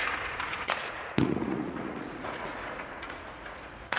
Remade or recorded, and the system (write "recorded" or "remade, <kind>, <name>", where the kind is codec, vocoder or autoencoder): remade, vocoder, Vocos